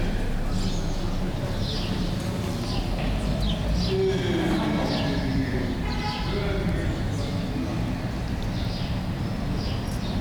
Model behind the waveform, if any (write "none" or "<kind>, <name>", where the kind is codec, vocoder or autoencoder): none